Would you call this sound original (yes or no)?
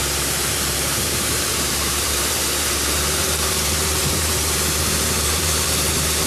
no